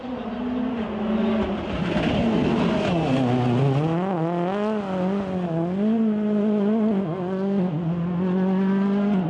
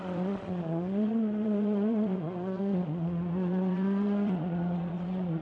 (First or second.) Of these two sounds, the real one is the first